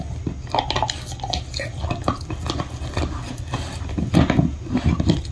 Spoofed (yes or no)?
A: no